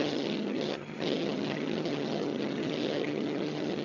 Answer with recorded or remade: remade